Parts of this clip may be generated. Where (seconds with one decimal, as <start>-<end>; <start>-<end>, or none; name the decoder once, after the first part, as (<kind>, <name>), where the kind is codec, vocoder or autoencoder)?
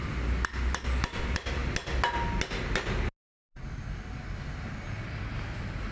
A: 0.0-1.6 (vocoder, BigVGAN v2); 5.1-5.9